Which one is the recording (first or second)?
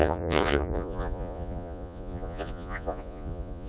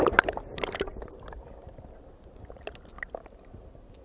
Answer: second